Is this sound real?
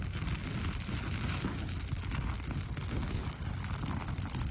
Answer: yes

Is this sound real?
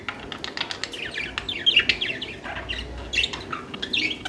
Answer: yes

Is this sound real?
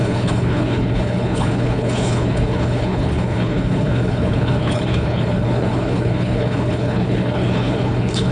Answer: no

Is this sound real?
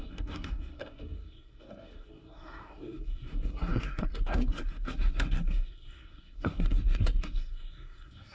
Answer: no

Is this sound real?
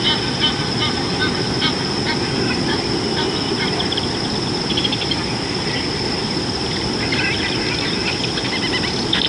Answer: yes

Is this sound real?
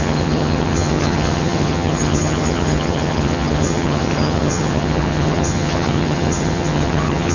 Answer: no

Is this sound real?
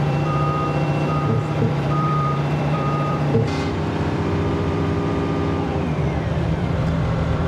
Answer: no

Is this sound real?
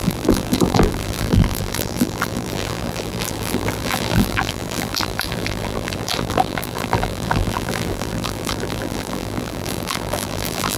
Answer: no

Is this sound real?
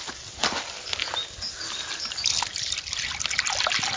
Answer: yes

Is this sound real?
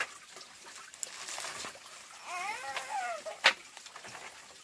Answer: yes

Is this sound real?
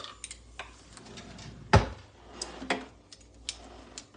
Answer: yes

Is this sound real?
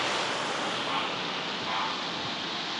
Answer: yes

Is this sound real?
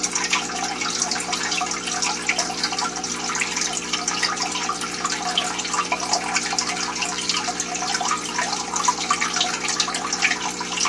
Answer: yes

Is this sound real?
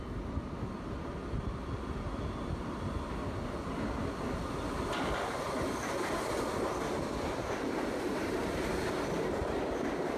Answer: yes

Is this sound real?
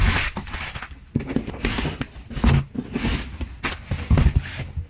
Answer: yes